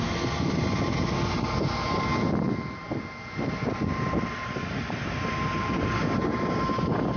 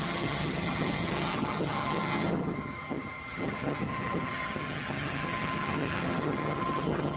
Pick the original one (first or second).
first